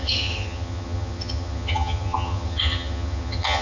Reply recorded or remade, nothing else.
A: remade